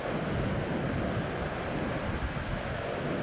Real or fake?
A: real